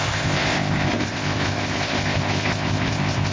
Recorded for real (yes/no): no